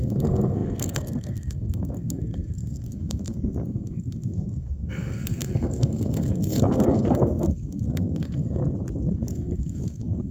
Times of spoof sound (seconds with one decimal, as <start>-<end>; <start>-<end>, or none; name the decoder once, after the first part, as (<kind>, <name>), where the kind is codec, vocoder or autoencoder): 0.0-8.6 (codec, SNAC); 9.3-10.3